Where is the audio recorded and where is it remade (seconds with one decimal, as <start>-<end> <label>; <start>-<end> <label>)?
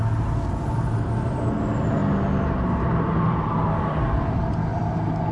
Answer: 0.0-5.3 recorded